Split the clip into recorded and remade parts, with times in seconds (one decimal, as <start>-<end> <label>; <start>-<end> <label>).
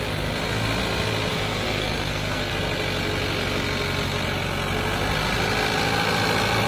0.0-1.3 recorded; 1.3-2.5 remade; 2.5-6.7 recorded